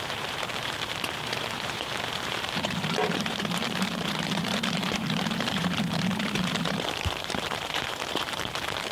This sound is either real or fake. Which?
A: fake